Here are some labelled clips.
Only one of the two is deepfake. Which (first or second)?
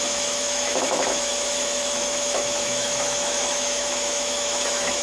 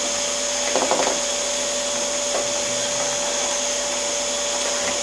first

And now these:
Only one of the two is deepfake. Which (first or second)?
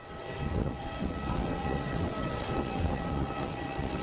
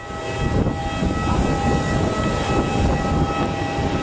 first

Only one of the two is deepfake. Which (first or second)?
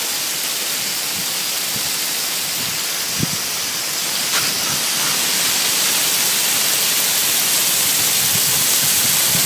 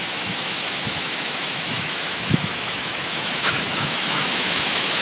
second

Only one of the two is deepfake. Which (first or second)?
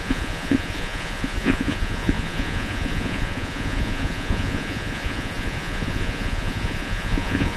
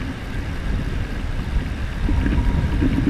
first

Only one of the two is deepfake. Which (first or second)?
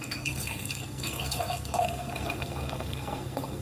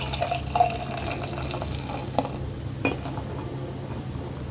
first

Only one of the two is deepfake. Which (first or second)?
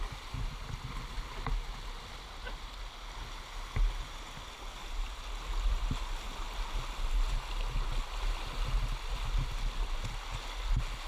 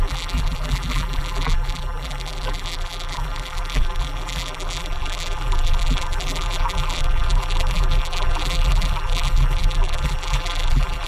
second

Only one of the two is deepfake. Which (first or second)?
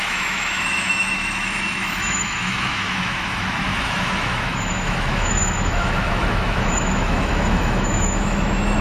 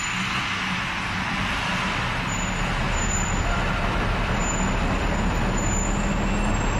first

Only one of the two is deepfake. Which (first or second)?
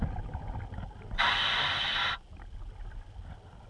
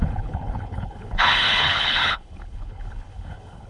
second